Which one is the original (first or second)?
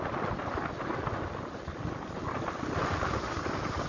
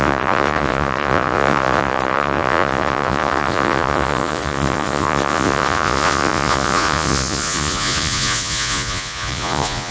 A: first